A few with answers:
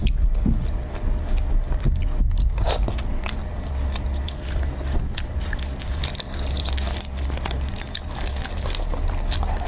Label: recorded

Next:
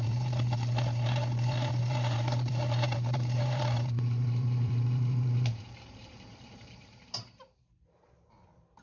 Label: remade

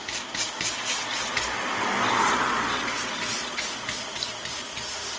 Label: recorded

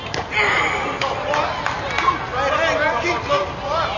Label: recorded